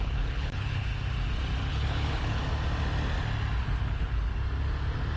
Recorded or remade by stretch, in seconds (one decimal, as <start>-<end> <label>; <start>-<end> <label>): 0.0-0.9 remade; 0.9-1.7 recorded; 1.7-2.4 remade; 2.4-3.6 recorded; 3.6-4.3 remade; 4.3-5.2 recorded